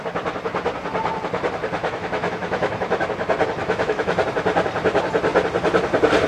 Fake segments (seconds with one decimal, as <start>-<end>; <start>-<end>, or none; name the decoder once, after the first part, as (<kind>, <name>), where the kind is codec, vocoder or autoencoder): 1.8-3.0 (autoencoder, DAC-VAE); 3.6-4.2